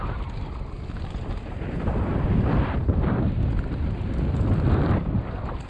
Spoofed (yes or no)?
yes